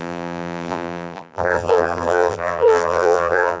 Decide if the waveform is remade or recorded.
remade